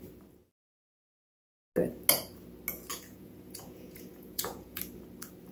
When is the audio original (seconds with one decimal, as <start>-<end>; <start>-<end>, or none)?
0.0-2.9; 4.8-5.5